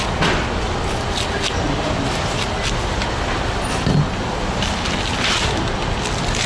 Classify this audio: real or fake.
real